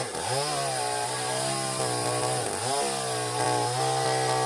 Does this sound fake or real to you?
real